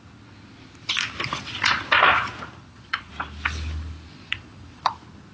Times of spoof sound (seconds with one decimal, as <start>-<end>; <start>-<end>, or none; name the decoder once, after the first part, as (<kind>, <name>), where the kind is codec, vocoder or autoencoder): 2.6-3.1 (vocoder, Vocos); 4.1-4.8